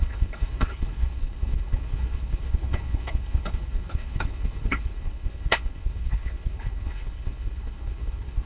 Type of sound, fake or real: fake